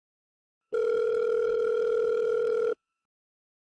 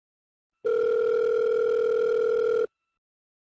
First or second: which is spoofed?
first